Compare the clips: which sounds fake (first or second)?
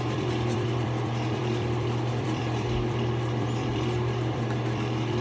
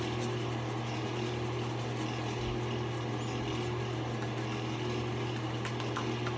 first